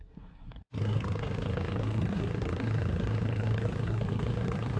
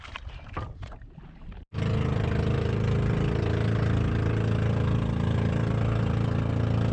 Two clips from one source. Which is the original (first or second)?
second